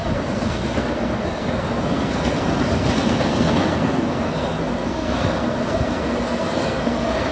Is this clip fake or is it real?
fake